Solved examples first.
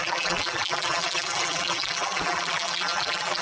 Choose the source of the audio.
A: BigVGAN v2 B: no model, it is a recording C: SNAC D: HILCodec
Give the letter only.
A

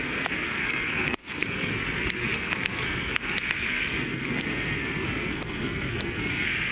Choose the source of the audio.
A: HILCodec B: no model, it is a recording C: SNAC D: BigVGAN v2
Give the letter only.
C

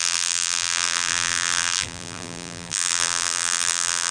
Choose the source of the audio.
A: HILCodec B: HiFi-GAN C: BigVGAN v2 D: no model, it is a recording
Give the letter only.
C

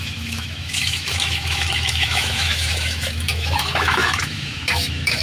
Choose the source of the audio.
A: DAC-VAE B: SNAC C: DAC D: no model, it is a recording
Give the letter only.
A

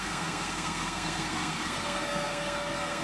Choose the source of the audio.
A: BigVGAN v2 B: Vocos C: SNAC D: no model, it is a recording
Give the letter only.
C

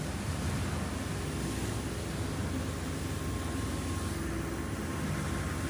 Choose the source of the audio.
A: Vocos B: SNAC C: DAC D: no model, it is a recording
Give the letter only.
D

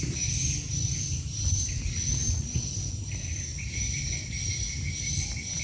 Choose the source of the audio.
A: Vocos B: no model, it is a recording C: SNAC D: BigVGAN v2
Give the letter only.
B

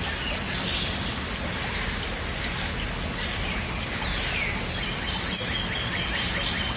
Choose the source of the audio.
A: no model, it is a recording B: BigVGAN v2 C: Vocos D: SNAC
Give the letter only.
A